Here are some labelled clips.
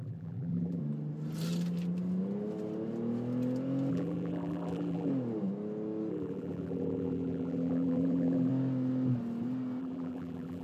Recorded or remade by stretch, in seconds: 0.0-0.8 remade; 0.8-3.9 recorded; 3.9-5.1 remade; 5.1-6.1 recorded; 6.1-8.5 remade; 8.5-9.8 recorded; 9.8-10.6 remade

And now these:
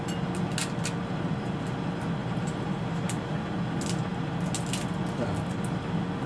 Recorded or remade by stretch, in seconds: 0.0-2.2 recorded; 2.2-3.4 remade; 3.4-6.3 recorded

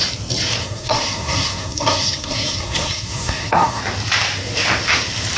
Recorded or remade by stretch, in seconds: 0.0-0.6 recorded; 0.6-3.8 remade; 3.8-5.4 recorded

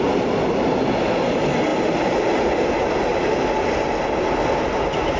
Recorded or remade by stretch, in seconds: 0.0-5.2 recorded

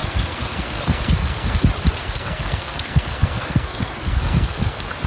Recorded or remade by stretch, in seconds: 0.0-1.6 remade; 1.6-2.0 recorded; 2.0-5.1 remade

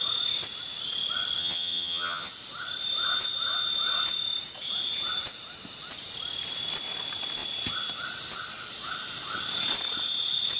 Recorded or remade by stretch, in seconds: 0.0-1.4 recorded; 1.4-2.3 remade; 2.3-10.6 recorded

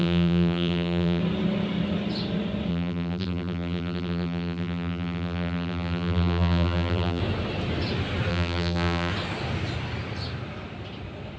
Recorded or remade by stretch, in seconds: 0.0-1.2 remade; 1.2-2.7 recorded; 2.7-7.2 remade; 7.2-8.3 recorded; 8.3-9.1 remade; 9.1-11.4 recorded